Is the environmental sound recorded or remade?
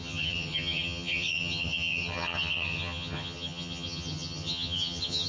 remade